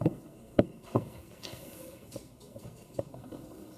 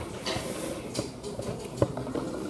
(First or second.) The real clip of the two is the second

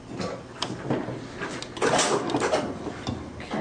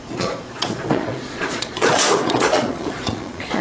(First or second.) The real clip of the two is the first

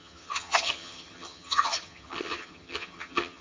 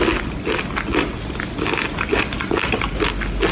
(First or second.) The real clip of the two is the second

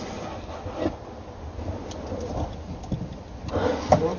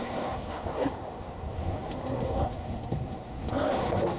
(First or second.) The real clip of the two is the first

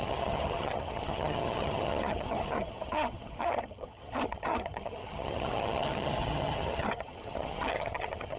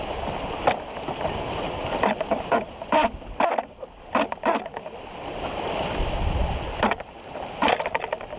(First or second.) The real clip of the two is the second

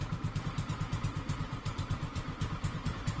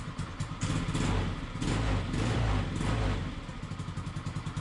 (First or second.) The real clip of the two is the second